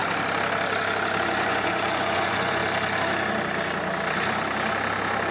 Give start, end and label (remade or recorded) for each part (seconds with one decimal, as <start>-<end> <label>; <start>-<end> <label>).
0.0-1.2 recorded; 1.2-2.6 remade; 2.6-5.3 recorded